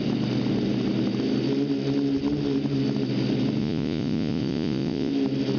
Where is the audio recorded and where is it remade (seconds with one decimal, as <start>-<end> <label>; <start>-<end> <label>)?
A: 0.0-3.6 recorded; 3.6-5.1 remade; 5.1-5.6 recorded